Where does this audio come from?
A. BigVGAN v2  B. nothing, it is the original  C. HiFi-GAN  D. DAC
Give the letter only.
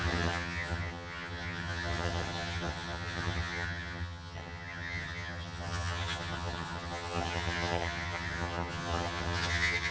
C